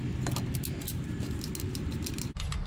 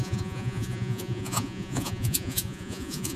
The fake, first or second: second